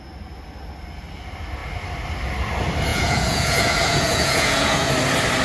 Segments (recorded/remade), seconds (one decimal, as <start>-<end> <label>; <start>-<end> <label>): 0.0-2.9 recorded; 2.9-4.9 remade; 4.9-5.4 recorded

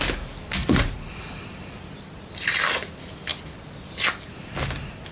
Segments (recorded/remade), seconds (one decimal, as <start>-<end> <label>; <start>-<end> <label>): 0.0-0.6 recorded; 0.6-1.3 remade; 1.3-5.1 recorded

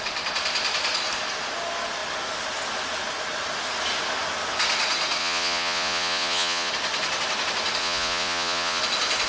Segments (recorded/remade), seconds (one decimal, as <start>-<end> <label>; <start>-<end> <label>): 0.0-5.2 recorded; 5.2-6.7 remade; 6.7-7.8 recorded; 7.8-8.8 remade; 8.8-9.3 recorded

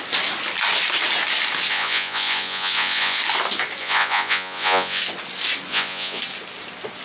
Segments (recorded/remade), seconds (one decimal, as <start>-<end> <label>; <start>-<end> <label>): 0.0-1.7 recorded; 1.7-3.2 remade; 3.2-3.8 recorded; 3.8-5.0 remade; 5.0-5.7 recorded; 5.7-6.2 remade; 6.2-7.0 recorded